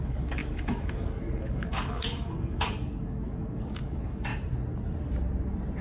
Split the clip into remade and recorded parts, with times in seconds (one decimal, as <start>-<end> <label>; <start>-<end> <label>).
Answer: 0.0-4.3 remade; 4.3-5.8 recorded